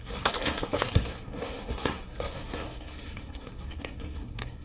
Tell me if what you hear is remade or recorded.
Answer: remade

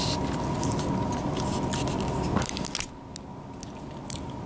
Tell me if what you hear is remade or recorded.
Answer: recorded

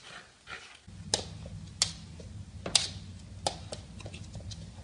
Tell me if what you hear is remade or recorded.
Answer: recorded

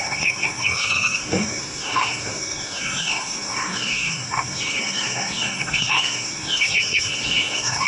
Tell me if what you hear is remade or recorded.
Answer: remade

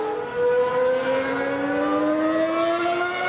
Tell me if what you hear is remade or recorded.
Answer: recorded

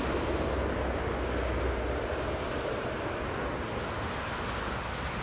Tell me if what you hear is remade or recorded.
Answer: recorded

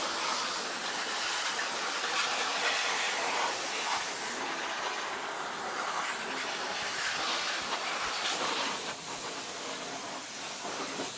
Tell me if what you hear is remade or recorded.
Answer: recorded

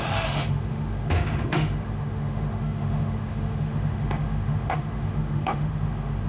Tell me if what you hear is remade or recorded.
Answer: remade